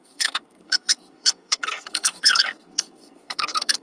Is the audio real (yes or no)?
no